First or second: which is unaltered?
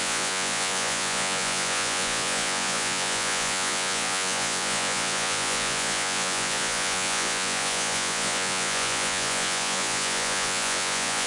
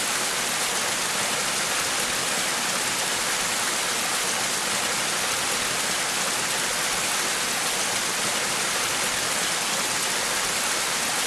second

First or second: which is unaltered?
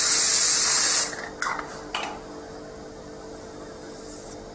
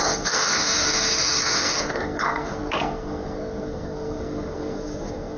first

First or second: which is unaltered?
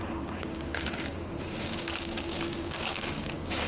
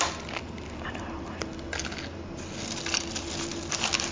second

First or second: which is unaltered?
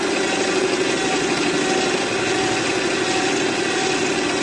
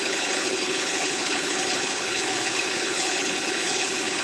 first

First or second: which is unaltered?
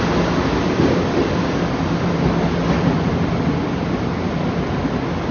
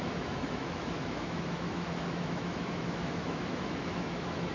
first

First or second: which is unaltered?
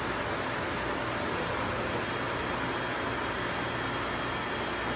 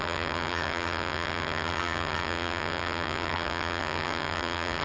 first